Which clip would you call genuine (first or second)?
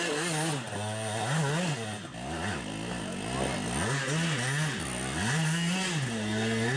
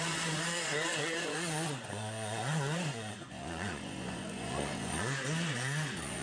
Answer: first